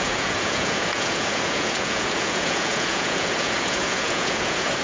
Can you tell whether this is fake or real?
fake